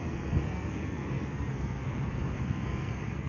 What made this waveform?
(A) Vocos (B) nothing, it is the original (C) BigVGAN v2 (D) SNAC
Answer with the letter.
D